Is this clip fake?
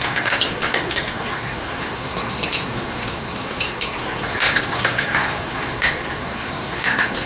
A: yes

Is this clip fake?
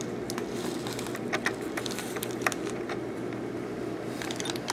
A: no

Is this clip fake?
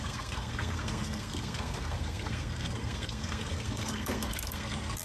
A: yes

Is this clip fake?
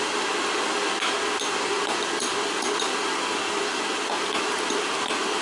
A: no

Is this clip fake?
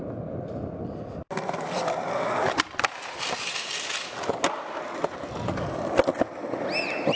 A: no